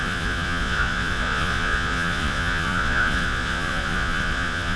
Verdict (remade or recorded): remade